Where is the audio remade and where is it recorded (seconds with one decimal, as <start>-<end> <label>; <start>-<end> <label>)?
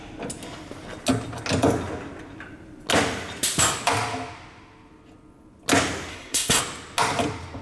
0.0-6.1 recorded; 6.1-6.6 remade; 6.6-7.6 recorded